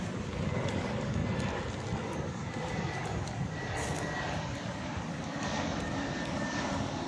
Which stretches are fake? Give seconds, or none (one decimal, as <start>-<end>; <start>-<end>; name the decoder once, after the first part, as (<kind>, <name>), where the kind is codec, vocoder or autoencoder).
0.0-1.2 (codec, DAC); 2.0-7.1